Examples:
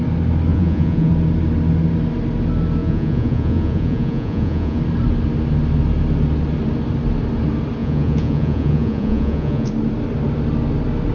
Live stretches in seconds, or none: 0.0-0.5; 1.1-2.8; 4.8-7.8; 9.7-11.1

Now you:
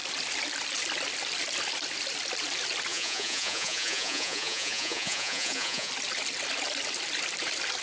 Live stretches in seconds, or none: 0.0-2.9; 5.9-7.8

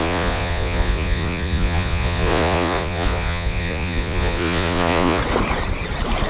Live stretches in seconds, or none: 5.2-6.3

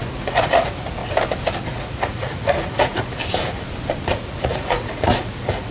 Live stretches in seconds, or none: 1.0-1.7; 3.2-4.1